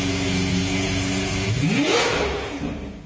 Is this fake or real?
real